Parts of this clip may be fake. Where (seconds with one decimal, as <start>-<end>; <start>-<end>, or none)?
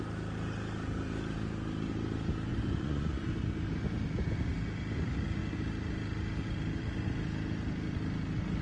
2.5-3.3